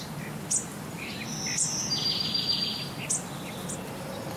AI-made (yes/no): no